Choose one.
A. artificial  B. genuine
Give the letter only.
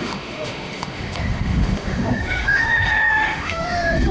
A